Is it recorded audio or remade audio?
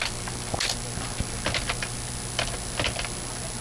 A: recorded